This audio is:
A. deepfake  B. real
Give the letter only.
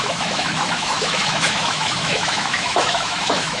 A